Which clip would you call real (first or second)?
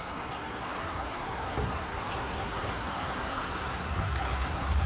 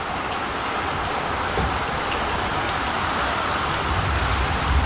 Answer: second